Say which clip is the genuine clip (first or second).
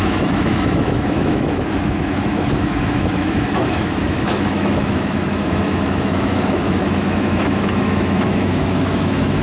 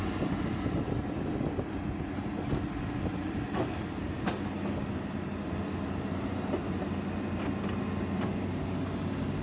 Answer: second